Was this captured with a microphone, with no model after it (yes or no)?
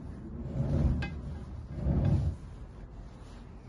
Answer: yes